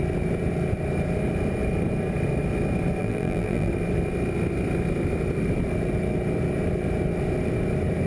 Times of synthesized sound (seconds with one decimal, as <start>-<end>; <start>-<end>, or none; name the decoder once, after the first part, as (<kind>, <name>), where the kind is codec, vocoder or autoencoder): 3.0-3.7 (vocoder, BigVGAN v2)

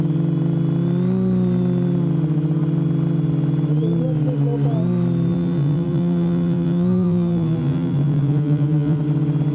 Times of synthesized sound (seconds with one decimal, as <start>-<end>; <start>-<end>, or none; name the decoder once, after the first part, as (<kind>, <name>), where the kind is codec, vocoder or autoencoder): 5.3-9.0 (vocoder, BigVGAN v2)

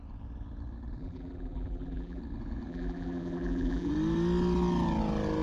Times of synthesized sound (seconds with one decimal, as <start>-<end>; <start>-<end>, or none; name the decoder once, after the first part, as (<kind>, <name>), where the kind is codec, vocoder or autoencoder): 1.0-2.2 (vocoder, BigVGAN v2); 2.7-3.9

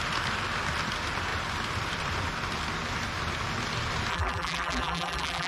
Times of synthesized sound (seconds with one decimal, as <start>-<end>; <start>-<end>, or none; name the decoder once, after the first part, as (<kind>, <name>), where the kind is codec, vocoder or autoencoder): 4.1-5.5 (vocoder, BigVGAN v2)